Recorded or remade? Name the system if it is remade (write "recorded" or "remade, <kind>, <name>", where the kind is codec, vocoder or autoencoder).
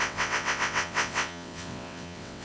remade, vocoder, WaveNeXt